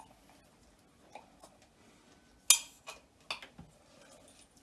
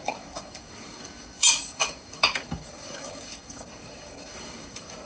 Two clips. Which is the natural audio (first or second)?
first